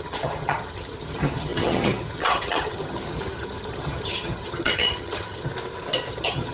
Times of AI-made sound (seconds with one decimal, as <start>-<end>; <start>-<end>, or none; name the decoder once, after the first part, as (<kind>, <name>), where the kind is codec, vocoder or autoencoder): 0.0-5.5 (vocoder, HiFi-GAN); 6.1-6.5